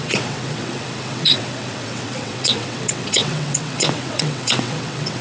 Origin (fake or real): fake